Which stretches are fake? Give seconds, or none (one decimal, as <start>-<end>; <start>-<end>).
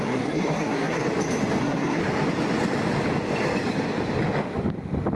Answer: 0.0-1.0; 1.6-2.0